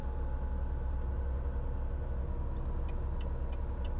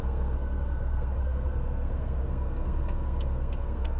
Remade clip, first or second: second